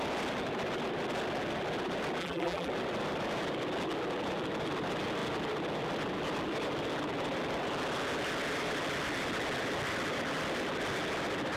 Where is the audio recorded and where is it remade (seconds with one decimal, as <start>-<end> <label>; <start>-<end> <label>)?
0.0-2.2 recorded; 2.2-2.7 remade; 2.7-11.6 recorded